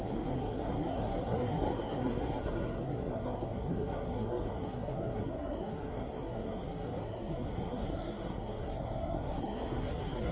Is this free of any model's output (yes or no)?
no